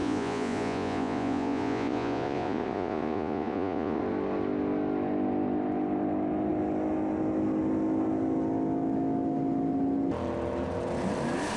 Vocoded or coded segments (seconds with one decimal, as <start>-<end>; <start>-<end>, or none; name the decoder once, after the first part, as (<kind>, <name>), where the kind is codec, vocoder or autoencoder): 0.0-4.0 (vocoder, Vocos)